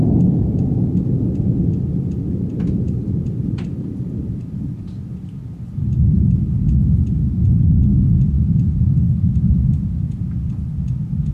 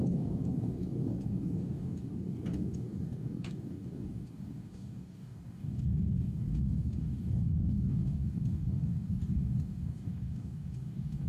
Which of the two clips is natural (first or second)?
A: first